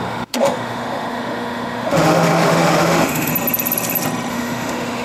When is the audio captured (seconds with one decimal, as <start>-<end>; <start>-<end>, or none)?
3.3-4.3